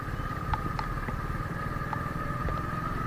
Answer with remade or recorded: recorded